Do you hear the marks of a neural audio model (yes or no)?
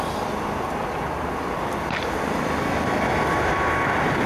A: no